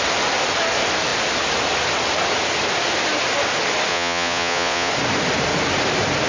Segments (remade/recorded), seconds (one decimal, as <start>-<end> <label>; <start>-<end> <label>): 0.0-3.9 recorded; 3.9-4.9 remade; 4.9-6.3 recorded